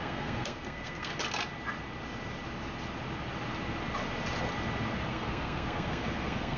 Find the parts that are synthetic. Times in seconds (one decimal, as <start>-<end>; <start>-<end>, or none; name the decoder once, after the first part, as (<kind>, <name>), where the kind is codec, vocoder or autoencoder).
0.0-1.1 (codec, SNAC); 5.1-6.6